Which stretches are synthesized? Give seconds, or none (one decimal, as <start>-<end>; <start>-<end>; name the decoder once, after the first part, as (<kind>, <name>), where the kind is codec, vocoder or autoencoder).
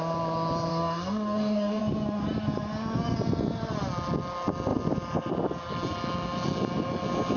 0.7-1.8 (codec, DAC)